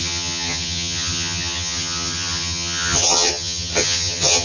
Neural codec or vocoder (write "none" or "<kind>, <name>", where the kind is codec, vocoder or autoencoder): vocoder, HiFi-GAN